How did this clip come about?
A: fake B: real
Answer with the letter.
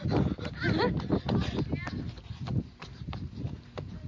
B